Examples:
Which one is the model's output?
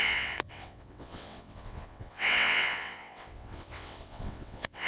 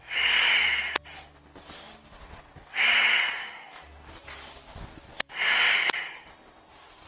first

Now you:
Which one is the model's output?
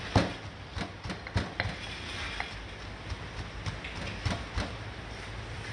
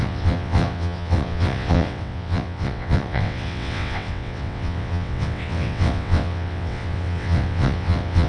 second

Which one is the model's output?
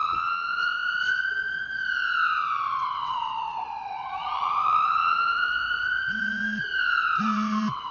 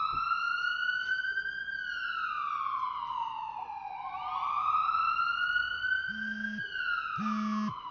first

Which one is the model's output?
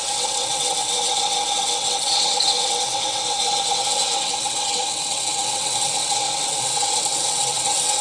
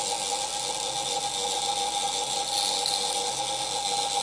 first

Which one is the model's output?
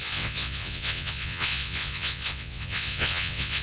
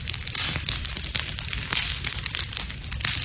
first